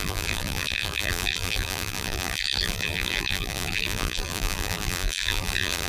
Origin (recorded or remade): remade